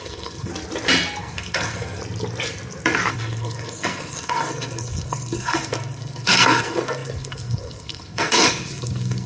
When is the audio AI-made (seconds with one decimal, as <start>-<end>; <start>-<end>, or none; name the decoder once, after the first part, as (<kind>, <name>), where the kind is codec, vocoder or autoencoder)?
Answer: 0.0-0.5 (codec, SNAC); 1.2-2.0; 3.1-9.3